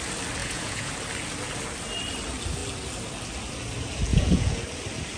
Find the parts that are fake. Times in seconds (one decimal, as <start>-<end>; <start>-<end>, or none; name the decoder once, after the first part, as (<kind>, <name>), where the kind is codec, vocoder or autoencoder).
0.4-0.9 (vocoder, Vocos); 4.1-4.6